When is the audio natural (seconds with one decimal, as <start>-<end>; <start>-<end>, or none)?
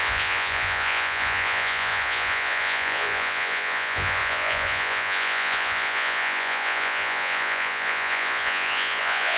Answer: none